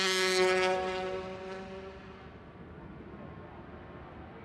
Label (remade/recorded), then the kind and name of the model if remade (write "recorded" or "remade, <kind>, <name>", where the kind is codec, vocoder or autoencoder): recorded